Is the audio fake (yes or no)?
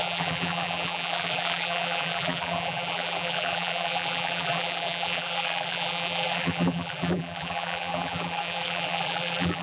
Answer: yes